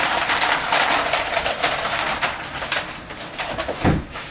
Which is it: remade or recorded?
recorded